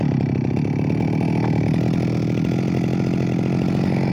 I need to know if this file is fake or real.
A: real